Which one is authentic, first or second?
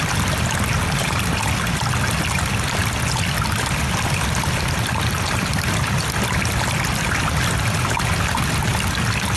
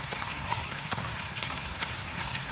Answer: first